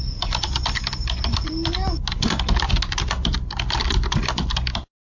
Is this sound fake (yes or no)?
no